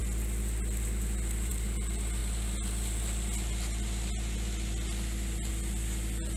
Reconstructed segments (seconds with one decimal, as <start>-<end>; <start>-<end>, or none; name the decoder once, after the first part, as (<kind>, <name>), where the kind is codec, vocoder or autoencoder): 0.0-2.2 (vocoder, BigVGAN v2); 5.5-6.4